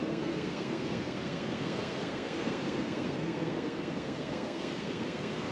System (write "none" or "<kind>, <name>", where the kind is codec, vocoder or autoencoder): codec, SNAC